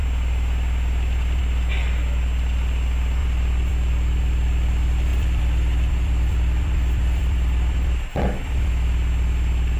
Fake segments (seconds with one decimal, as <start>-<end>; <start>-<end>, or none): 3.2-3.7; 5.1-8.7